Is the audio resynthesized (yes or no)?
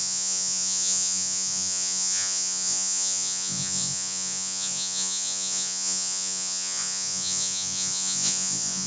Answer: yes